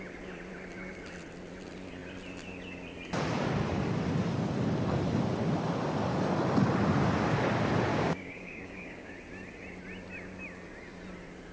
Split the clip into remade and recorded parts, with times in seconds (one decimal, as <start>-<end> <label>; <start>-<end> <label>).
0.0-7.9 recorded; 7.9-9.1 remade; 9.1-11.5 recorded